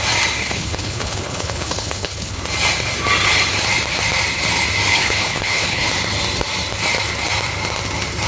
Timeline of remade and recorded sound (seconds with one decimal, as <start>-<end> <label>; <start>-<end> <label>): 0.0-0.4 recorded; 0.4-2.4 remade; 2.4-4.9 recorded; 4.9-5.9 remade; 5.9-8.3 recorded